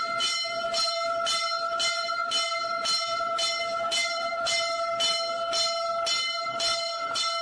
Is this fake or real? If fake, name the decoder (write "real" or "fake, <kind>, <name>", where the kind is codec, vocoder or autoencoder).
real